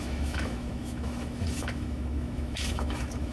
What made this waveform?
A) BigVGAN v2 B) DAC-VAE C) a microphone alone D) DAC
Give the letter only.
B